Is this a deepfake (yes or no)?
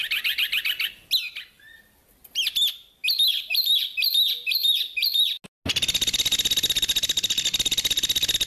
no